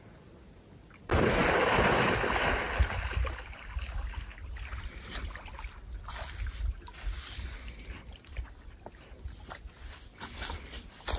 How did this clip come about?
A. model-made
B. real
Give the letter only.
B